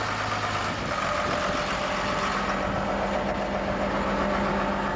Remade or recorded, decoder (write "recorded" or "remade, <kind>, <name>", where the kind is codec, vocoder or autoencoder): recorded